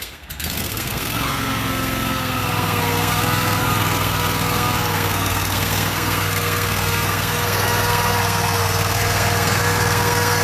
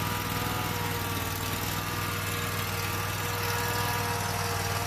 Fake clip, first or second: first